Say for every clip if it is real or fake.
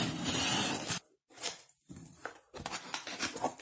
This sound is real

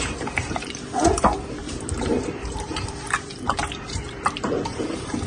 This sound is fake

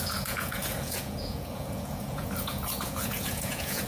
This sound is fake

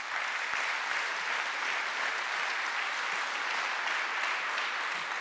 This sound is real